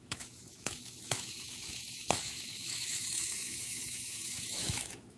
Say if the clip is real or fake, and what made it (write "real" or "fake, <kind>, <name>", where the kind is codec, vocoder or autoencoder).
fake, autoencoder, DAC-VAE